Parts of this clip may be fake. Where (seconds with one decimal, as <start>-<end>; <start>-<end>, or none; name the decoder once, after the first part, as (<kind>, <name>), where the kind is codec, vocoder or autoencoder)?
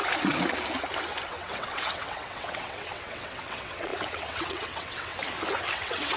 1.3-5.1 (vocoder, WaveNeXt); 5.7-6.2